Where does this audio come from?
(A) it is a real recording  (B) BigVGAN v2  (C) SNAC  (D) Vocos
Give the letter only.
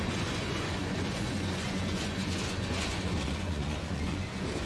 D